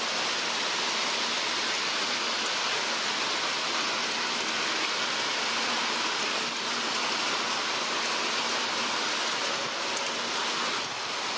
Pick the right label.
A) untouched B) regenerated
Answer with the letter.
A